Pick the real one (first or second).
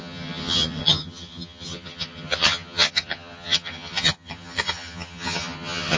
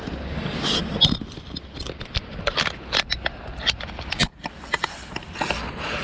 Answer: second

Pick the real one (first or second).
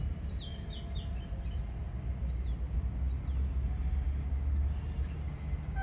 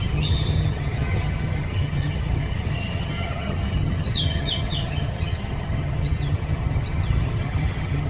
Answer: first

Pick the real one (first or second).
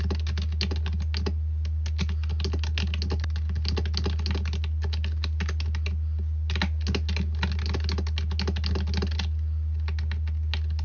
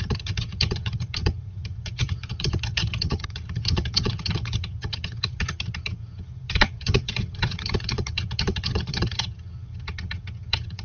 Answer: first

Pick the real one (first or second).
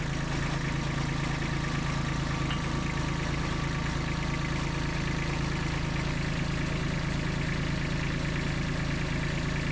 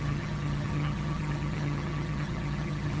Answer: first